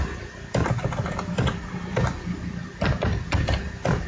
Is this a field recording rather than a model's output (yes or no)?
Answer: no